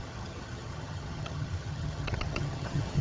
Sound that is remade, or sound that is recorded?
remade